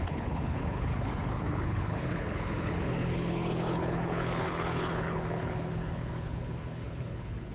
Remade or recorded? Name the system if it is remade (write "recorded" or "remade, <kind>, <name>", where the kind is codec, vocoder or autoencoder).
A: remade, codec, HILCodec